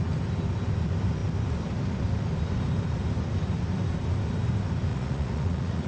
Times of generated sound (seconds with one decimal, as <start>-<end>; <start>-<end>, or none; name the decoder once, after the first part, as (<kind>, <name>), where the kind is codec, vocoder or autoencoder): 4.9-5.9 (vocoder, Vocos)